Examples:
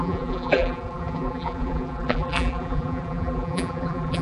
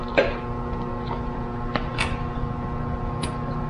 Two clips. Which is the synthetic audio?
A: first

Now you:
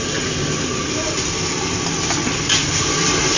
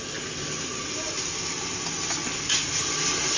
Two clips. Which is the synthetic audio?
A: first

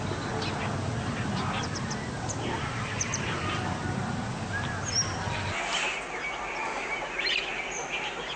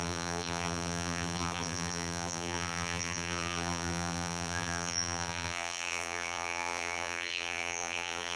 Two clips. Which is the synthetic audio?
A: second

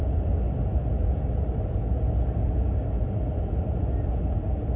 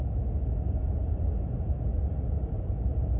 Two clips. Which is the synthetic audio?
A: second